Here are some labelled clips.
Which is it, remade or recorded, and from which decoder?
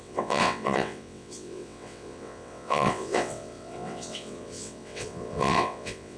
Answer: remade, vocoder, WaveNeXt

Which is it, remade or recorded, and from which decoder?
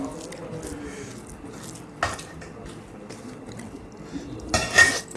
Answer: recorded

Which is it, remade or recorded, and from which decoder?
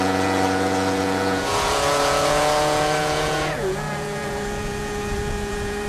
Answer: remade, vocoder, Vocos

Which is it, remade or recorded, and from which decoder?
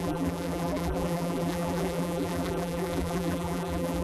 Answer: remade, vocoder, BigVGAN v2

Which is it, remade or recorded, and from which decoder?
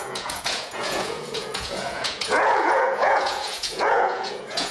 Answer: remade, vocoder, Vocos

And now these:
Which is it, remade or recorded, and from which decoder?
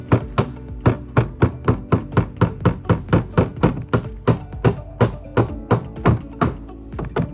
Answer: recorded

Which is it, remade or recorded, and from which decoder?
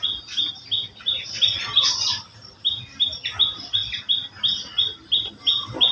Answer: recorded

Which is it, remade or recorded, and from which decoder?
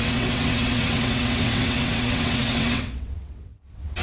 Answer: remade, vocoder, WaveNeXt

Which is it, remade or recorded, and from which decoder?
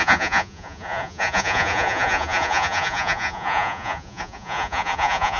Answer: remade, vocoder, Vocos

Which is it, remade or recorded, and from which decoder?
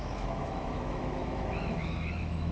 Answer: remade, autoencoder, DAC-VAE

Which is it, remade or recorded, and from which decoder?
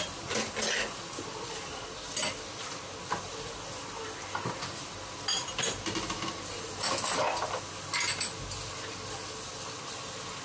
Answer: recorded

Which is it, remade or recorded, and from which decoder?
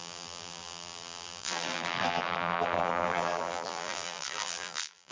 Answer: remade, vocoder, BigVGAN v2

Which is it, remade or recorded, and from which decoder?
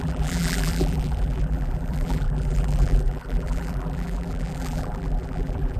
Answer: remade, vocoder, BigVGAN v2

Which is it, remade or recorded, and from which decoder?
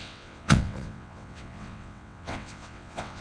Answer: remade, vocoder, WaveNeXt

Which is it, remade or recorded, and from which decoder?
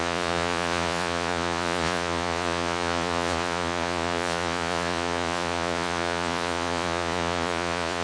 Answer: remade, vocoder, Vocos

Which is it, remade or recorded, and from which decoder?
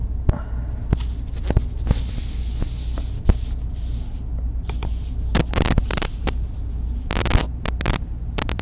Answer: recorded